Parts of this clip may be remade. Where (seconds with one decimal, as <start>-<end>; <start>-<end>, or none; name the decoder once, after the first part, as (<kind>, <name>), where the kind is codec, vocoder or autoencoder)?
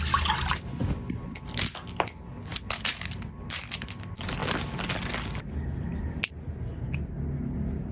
none